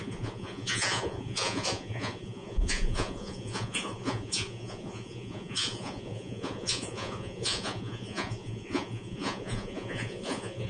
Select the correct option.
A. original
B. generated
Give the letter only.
B